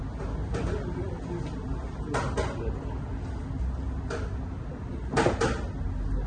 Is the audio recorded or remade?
recorded